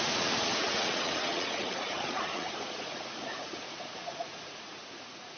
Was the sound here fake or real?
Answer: fake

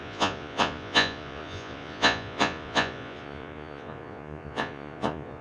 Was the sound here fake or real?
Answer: fake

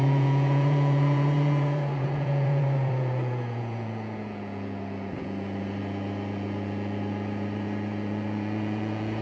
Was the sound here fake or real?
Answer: fake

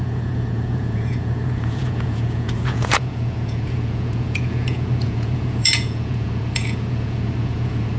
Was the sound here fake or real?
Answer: fake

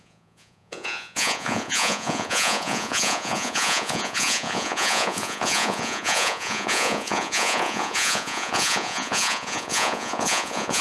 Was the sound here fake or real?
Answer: fake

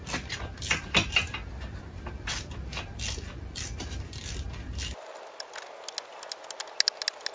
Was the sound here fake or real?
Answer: real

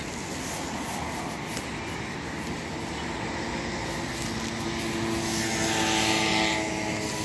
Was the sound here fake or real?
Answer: real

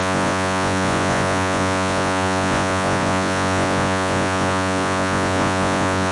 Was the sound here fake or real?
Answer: fake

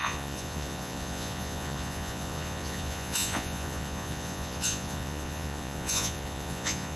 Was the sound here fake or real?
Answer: fake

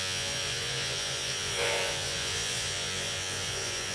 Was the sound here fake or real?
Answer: fake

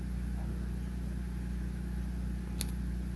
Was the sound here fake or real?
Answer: real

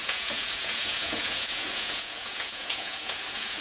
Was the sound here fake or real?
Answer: fake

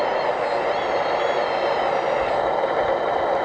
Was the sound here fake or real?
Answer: real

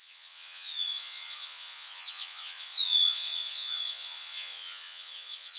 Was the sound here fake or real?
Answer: fake